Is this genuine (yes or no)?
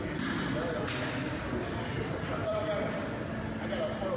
yes